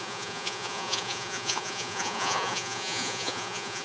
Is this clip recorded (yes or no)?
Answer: no